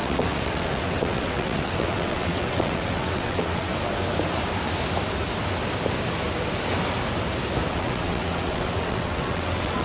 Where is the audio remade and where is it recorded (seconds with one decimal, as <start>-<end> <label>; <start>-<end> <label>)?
0.0-3.7 remade; 3.7-7.7 recorded; 7.7-9.8 remade